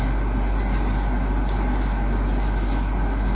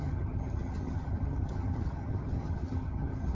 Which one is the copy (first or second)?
second